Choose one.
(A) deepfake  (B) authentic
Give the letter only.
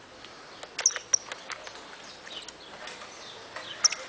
B